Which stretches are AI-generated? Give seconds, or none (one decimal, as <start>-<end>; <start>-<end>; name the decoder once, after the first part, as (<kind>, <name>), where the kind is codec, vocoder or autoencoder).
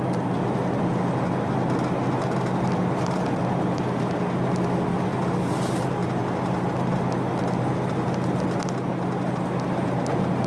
none